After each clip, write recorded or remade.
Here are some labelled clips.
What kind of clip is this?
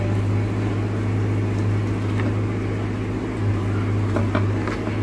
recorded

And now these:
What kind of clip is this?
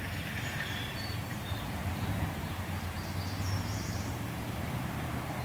remade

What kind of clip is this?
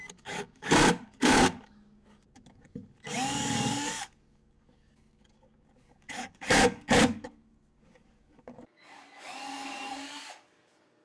remade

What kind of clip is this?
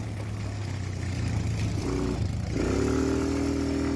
recorded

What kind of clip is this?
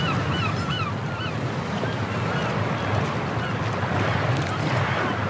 recorded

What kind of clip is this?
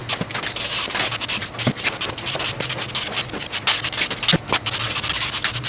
recorded